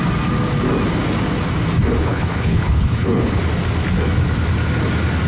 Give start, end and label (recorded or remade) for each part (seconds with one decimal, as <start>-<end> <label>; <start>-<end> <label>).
0.0-2.0 recorded; 2.0-3.4 remade; 3.4-5.3 recorded